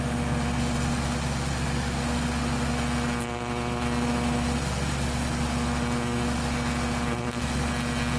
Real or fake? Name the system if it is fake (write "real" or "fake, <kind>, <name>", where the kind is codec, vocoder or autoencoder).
real